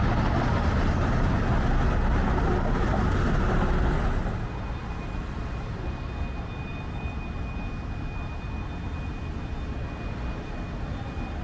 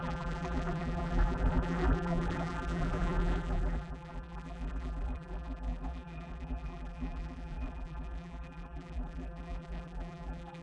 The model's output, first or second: second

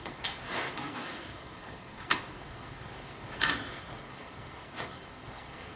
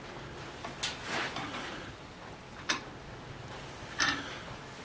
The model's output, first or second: first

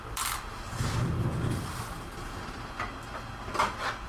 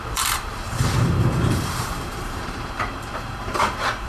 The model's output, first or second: second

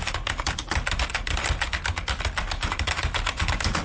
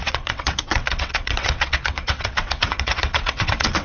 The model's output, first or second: second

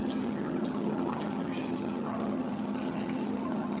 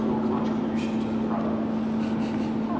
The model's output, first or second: first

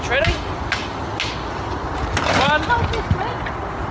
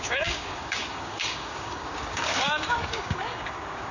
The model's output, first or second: second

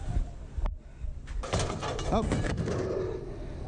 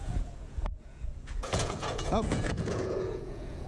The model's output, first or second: second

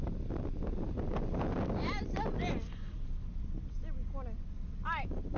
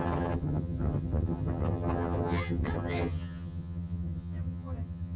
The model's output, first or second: second